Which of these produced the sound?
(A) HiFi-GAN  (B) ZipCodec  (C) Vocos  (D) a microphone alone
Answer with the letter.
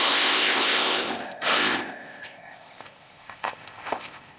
B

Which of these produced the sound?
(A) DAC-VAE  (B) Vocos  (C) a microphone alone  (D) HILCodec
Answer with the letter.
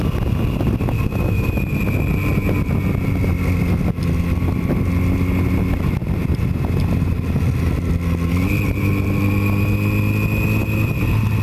C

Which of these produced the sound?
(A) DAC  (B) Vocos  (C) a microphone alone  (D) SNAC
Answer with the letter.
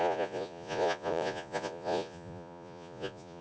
B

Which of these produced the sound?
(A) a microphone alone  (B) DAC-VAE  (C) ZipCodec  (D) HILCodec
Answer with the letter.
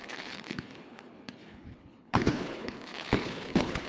D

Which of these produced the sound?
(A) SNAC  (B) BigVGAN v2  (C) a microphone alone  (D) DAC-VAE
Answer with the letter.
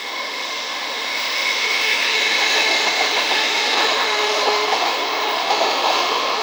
D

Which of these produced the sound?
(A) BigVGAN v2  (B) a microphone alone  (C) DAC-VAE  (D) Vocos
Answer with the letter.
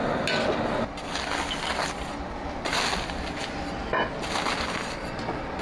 B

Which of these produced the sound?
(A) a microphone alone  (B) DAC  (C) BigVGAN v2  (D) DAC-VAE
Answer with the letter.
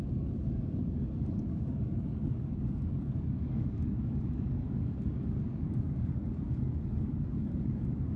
B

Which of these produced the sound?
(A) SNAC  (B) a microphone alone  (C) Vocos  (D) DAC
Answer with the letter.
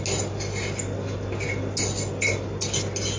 B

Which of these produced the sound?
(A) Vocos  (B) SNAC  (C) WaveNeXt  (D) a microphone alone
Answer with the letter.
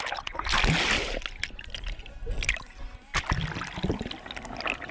D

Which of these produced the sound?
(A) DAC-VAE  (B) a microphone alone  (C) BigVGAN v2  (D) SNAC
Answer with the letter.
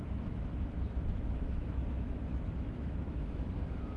A